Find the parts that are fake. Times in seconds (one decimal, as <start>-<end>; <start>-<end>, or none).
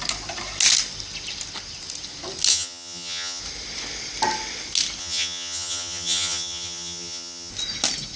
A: 2.5-3.4; 5.0-7.5